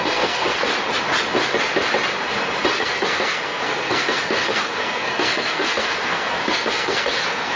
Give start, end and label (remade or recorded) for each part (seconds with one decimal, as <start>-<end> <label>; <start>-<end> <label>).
0.0-0.7 remade; 0.7-2.7 recorded; 2.7-7.6 remade